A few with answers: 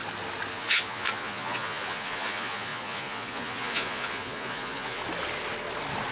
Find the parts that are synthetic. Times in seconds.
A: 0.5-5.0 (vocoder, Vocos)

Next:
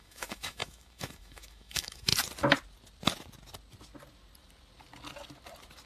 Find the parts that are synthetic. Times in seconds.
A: 0.0-2.1 (autoencoder, DAC-VAE)

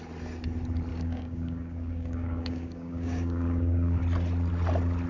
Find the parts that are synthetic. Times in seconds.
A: 0.9-4.0 (codec, DAC)

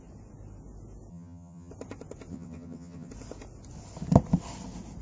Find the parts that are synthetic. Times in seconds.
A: 1.1-1.7 (vocoder, HiFi-GAN); 2.3-3.1

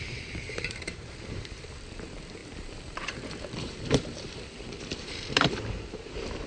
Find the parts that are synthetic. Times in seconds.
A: 0.0-6.5 (vocoder, BigVGAN v2)

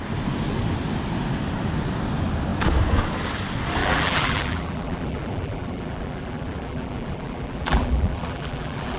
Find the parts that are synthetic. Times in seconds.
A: 3.8-9.0 (vocoder, BigVGAN v2)